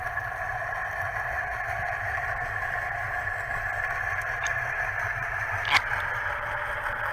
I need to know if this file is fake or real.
real